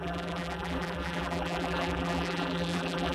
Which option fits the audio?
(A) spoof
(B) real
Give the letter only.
A